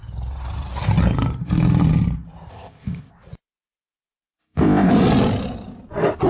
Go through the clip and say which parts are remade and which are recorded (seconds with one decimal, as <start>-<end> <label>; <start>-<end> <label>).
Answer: 0.0-2.5 recorded; 2.5-3.1 remade; 3.1-4.4 recorded; 4.4-4.9 remade; 4.9-6.3 recorded